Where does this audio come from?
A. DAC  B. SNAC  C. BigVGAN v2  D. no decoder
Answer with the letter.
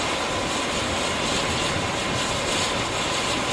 D